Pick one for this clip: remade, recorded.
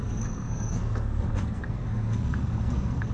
remade